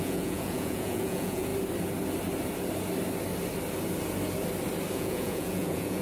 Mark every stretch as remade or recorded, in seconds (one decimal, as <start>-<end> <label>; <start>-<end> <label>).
0.0-1.5 remade; 1.5-4.9 recorded; 4.9-6.0 remade